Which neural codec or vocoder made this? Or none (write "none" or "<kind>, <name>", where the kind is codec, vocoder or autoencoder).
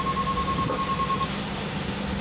none